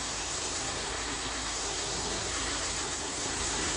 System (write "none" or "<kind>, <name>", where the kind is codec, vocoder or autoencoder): codec, SNAC